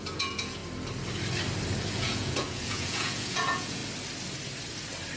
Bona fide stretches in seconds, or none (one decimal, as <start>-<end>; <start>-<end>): 0.6-1.9; 3.8-5.2